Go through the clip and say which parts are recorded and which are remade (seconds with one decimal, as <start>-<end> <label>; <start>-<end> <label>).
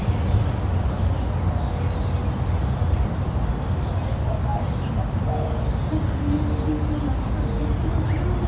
0.0-8.5 recorded